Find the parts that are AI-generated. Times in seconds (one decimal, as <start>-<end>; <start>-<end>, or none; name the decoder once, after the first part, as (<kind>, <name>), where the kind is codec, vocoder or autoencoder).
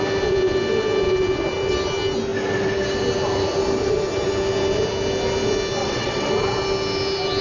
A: 5.8-6.3 (vocoder, WaveNeXt)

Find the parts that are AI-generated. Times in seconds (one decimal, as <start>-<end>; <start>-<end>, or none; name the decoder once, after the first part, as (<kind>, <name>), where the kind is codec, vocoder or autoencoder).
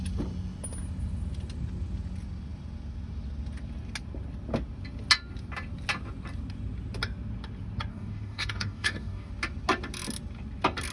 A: 7.9-9.3 (codec, DAC)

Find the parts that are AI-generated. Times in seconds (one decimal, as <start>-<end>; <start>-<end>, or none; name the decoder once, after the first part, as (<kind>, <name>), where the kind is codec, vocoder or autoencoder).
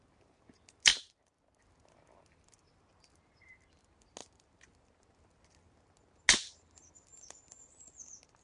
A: none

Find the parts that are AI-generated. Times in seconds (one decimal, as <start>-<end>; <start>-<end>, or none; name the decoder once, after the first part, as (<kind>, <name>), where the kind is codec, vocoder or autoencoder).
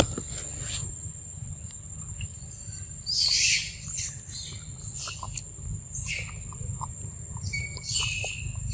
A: 0.8-1.5 (vocoder, BigVGAN v2); 2.3-4.1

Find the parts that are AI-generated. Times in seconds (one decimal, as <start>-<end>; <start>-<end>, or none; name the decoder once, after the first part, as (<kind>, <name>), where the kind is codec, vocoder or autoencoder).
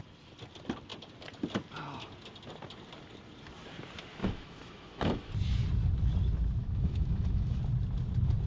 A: 4.2-5.3 (autoencoder, DAC-VAE); 6.6-7.6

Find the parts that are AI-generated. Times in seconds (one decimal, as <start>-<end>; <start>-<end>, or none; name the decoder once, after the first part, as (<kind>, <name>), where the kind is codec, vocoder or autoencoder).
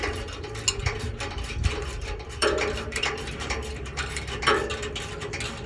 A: 0.8-4.2 (vocoder, BigVGAN v2)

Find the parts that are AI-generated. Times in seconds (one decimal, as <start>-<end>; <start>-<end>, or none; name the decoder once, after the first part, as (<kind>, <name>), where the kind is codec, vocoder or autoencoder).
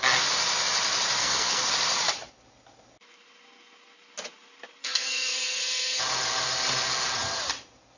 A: 1.2-1.7 (codec, SNAC); 4.8-6.0